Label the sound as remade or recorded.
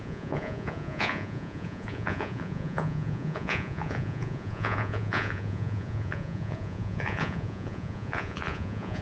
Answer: remade